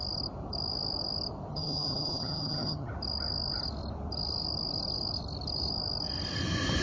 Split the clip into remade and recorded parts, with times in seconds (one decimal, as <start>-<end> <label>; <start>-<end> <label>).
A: 0.0-1.5 recorded; 1.5-2.9 remade; 2.9-6.8 recorded